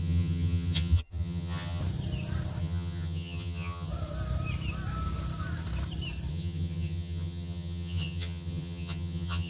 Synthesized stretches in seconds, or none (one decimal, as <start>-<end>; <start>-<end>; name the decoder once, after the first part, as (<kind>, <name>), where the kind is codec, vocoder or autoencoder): 0.0-1.8 (vocoder, HiFi-GAN); 2.6-3.9; 6.3-9.5